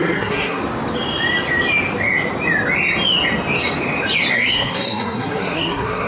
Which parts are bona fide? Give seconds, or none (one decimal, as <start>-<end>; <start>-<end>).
0.6-4.3